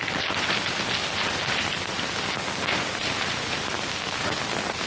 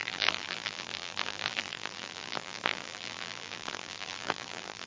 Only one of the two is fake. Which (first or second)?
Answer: second